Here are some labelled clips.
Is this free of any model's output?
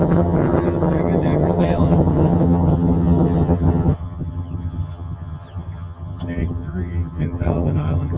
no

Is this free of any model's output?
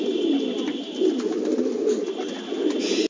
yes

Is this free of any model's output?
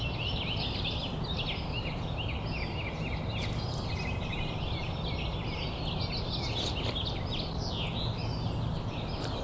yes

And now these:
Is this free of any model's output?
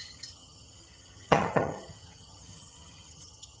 no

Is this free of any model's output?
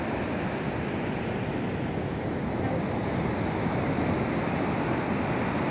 yes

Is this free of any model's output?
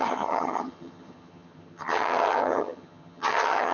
no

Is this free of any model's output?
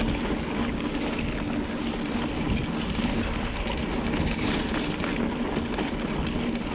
yes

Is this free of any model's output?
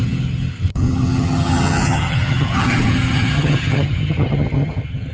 no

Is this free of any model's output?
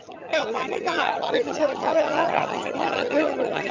no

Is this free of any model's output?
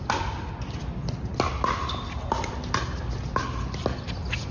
yes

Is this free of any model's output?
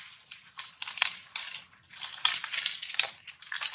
yes